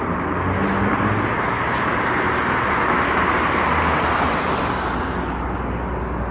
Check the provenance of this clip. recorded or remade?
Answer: recorded